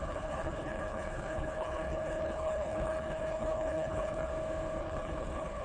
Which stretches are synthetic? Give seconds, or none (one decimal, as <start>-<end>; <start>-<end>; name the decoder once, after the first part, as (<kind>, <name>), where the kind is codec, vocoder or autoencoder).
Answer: 0.0-4.3 (codec, HILCodec); 4.8-5.6